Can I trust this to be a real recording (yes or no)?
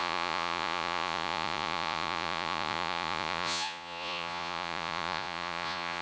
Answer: no